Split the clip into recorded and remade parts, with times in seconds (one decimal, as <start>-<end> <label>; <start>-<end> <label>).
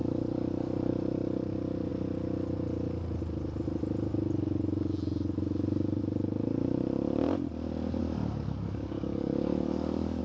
0.0-0.9 remade; 0.9-8.0 recorded; 8.0-10.2 remade